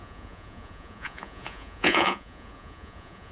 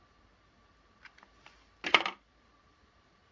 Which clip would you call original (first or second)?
second